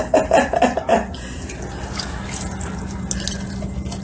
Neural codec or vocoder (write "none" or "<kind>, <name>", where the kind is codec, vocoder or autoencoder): none